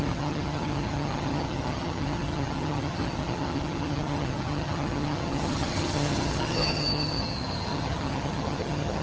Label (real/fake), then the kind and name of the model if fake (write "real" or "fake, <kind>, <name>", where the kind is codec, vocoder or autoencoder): fake, vocoder, HiFi-GAN